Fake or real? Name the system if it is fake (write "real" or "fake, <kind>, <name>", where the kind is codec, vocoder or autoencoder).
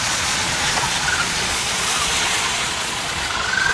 fake, vocoder, Vocos